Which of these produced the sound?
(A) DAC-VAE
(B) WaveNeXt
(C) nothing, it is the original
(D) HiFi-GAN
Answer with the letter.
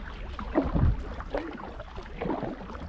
C